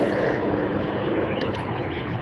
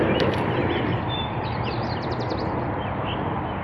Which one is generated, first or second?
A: first